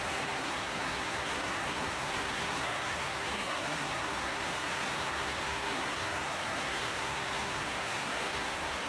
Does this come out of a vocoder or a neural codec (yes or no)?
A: yes